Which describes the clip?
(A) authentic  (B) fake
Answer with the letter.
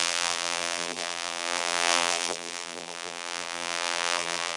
B